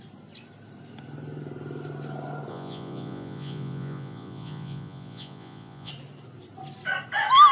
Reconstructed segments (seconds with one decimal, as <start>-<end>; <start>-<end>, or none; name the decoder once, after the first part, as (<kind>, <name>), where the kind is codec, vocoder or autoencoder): 2.5-5.9 (vocoder, Vocos)